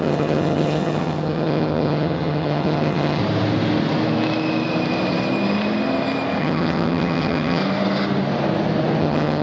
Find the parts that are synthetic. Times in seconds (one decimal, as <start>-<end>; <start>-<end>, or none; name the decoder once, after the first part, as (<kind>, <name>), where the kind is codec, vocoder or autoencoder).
0.0-3.2 (vocoder, HiFi-GAN); 6.4-7.6; 9.0-9.4